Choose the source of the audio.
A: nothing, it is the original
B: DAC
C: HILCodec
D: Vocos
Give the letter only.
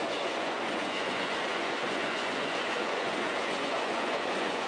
D